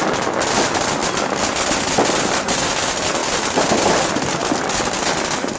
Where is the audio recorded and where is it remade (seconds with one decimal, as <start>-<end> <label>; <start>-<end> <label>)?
0.0-5.6 recorded

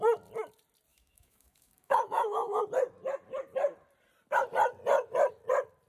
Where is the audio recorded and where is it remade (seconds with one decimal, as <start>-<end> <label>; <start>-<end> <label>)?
0.0-0.9 recorded; 0.9-2.6 remade; 2.6-5.9 recorded

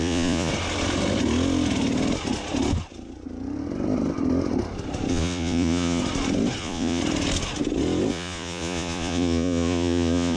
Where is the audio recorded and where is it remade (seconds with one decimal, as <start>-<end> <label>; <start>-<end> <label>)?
0.0-0.5 remade; 0.5-5.1 recorded; 5.1-6.0 remade; 6.0-6.6 recorded; 6.6-7.0 remade; 7.0-8.1 recorded; 8.1-10.4 remade

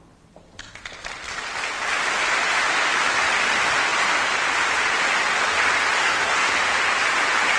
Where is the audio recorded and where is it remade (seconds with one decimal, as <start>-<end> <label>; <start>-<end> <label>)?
0.0-6.0 recorded; 6.0-6.5 remade; 6.5-7.6 recorded